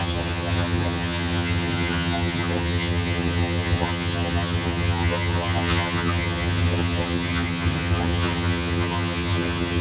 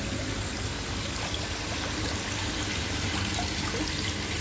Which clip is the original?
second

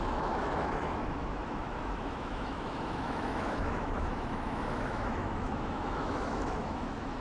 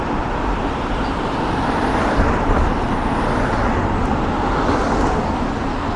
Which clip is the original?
second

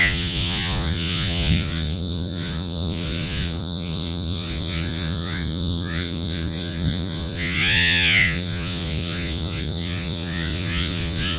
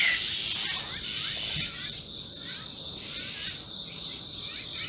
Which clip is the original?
second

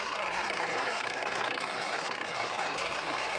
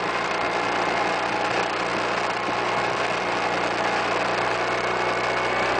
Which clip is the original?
second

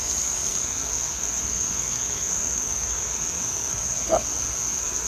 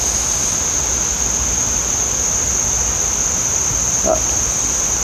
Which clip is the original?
second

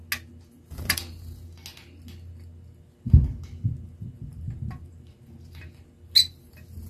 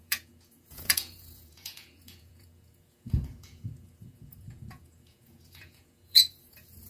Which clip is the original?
first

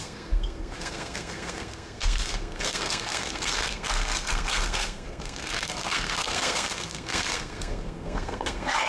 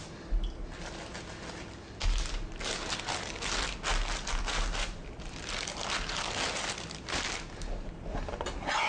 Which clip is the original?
second